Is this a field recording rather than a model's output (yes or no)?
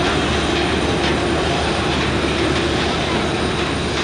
yes